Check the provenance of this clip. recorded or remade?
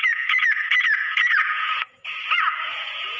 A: remade